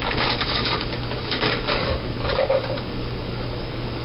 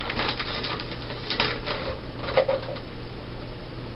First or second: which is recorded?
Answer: second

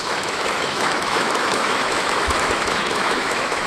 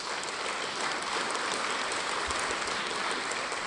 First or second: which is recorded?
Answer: second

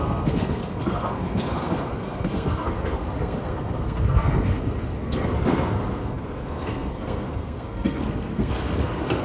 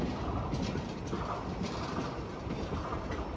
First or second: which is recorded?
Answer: second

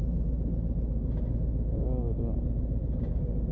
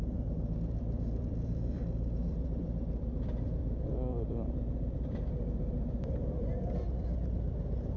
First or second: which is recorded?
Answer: first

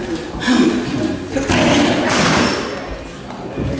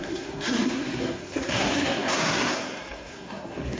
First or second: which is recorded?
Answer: first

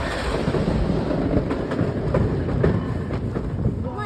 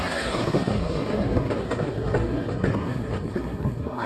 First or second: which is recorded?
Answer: first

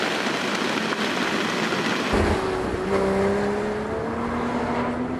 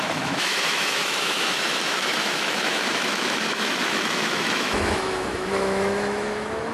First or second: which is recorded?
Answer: first